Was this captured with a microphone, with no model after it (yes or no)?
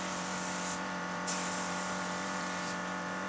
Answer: no